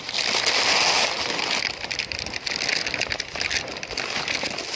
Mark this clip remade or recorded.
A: recorded